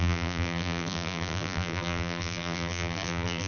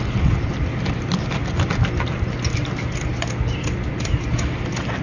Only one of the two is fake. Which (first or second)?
first